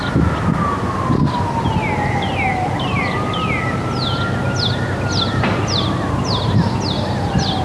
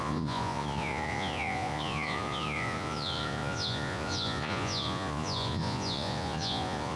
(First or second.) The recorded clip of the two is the first